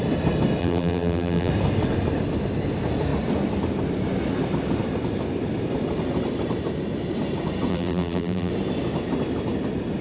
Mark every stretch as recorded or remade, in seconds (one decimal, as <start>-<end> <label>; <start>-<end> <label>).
0.0-0.6 recorded; 0.6-1.5 remade; 1.5-7.7 recorded; 7.7-8.5 remade; 8.5-10.0 recorded